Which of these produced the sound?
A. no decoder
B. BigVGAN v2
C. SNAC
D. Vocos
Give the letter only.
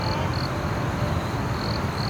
A